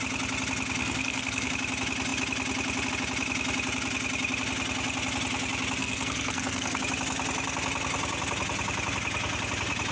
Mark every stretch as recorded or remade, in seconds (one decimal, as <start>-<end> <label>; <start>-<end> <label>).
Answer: 0.0-0.8 recorded; 0.8-1.5 remade; 1.5-5.8 recorded; 5.8-6.8 remade; 6.8-9.9 recorded